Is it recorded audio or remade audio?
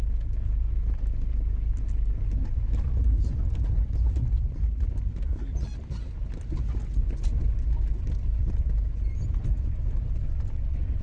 recorded